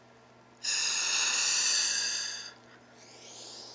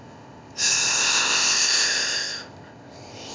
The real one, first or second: first